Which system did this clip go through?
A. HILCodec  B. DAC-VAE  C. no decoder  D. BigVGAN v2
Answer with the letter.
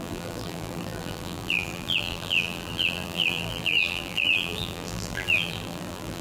D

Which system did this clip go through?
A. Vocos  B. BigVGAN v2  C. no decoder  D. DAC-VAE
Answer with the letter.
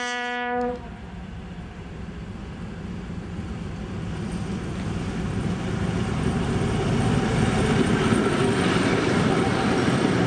B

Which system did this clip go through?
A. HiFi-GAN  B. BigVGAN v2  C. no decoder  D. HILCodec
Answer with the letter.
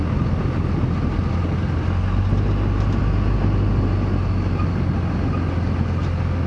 C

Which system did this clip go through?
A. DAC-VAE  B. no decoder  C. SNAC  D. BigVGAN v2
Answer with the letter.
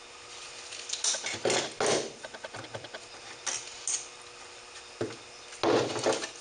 B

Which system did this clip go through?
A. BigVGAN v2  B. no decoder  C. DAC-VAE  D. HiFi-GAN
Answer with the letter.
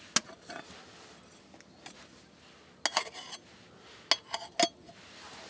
B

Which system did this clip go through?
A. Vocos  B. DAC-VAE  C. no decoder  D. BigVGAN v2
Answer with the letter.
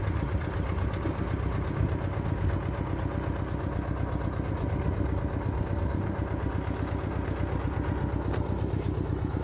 C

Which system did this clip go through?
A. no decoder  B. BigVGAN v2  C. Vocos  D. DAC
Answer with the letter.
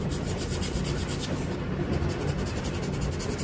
A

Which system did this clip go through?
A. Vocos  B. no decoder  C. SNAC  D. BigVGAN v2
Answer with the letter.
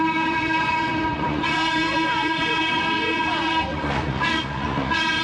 A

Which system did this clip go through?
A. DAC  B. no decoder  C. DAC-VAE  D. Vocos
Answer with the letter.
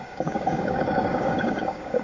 A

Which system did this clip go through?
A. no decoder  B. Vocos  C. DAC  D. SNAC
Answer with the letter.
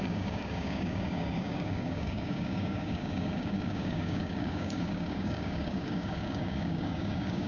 C